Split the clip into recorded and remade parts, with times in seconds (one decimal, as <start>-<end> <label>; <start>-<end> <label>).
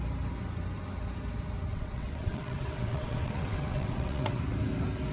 0.0-1.7 recorded; 1.7-4.4 remade; 4.4-5.1 recorded